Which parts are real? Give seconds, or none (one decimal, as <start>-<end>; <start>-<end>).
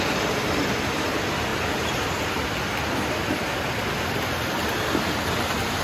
0.0-5.8